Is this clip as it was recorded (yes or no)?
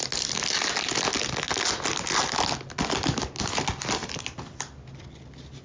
yes